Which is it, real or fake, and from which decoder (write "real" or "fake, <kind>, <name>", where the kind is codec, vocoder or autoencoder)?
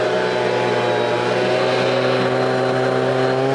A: real